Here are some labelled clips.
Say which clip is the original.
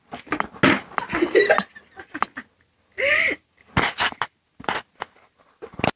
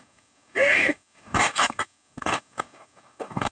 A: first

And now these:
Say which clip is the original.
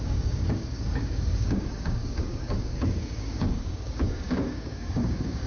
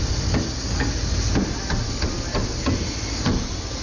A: second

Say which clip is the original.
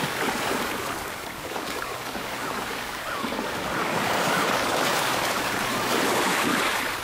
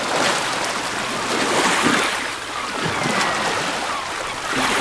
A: second